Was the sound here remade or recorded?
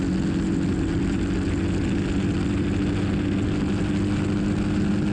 recorded